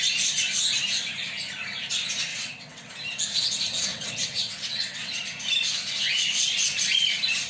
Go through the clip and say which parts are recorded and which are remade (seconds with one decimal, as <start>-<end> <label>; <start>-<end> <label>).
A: 0.0-2.3 recorded; 2.3-2.9 remade; 2.9-3.9 recorded; 3.9-5.1 remade; 5.1-7.5 recorded